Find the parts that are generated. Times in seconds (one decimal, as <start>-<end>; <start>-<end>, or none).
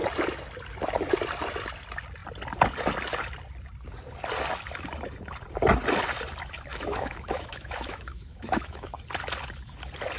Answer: 6.7-9.0